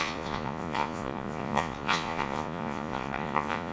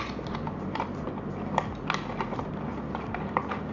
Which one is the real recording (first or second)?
second